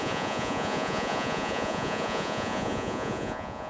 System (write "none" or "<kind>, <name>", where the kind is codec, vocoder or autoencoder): vocoder, Vocos